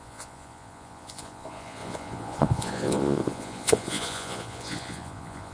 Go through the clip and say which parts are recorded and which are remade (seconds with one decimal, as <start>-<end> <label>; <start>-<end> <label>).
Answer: 0.0-5.5 remade